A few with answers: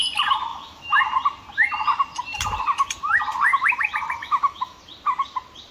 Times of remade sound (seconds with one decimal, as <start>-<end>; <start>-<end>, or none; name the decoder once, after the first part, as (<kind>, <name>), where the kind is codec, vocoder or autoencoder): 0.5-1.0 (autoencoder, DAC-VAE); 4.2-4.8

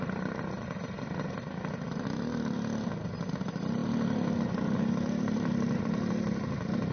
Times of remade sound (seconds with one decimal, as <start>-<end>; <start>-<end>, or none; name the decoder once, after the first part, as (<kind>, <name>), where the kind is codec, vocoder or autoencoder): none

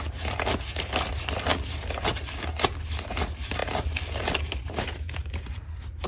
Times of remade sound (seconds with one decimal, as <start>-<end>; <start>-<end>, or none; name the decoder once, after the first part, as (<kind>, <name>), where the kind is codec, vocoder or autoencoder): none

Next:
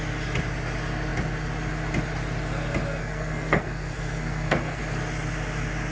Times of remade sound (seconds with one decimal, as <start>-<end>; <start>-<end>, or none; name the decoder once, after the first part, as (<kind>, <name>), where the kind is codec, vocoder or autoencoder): 3.0-4.8 (codec, SNAC)

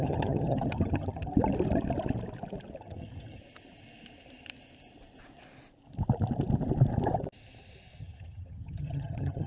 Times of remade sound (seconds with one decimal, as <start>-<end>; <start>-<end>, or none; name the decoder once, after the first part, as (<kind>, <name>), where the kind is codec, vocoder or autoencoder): 0.0-1.3 (vocoder, HiFi-GAN); 2.8-3.4; 8.0-9.5

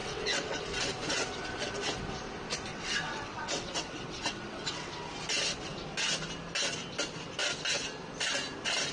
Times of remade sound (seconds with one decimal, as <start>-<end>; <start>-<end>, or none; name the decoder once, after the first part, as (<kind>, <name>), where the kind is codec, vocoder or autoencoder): 0.0-0.6 (vocoder, WaveNeXt); 2.7-4.9